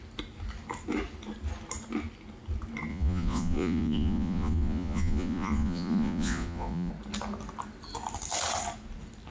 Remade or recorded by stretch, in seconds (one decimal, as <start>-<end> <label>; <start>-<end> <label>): 0.0-2.9 recorded; 2.9-6.9 remade; 6.9-9.3 recorded